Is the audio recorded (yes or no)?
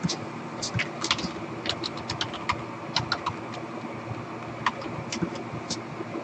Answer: yes